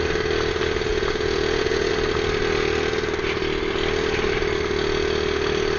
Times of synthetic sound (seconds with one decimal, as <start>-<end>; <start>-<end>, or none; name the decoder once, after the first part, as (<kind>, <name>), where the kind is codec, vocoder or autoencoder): 0.9-1.9 (vocoder, Vocos)